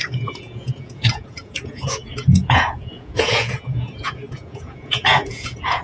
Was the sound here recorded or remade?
remade